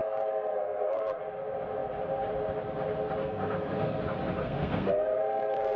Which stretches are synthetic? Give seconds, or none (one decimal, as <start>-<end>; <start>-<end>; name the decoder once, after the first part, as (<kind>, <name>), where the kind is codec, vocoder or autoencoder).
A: 0.0-1.2 (codec, SNAC); 3.2-4.0; 4.4-5.8